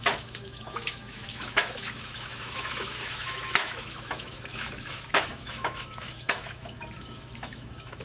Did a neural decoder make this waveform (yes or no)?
yes